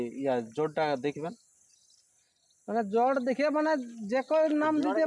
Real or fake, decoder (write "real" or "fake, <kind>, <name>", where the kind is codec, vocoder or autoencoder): real